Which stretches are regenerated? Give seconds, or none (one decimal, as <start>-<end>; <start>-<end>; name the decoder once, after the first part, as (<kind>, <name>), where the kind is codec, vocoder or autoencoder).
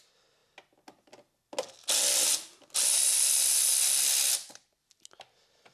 none